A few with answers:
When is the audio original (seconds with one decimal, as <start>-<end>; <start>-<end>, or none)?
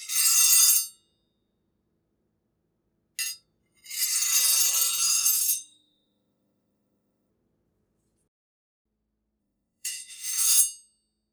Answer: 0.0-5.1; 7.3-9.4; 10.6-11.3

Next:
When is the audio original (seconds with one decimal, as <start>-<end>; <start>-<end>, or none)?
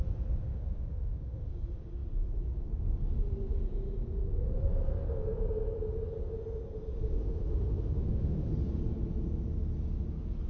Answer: 0.0-0.5; 1.5-7.1; 8.5-10.5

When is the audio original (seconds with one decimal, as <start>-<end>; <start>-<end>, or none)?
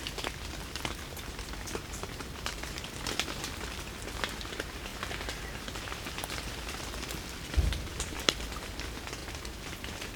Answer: 0.0-4.9; 5.6-9.2; 9.7-10.2